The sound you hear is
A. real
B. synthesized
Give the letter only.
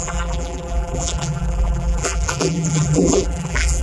B